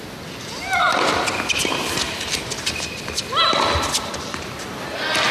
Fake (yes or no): no